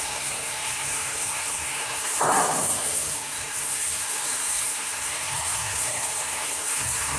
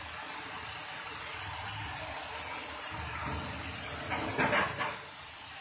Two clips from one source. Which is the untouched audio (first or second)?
second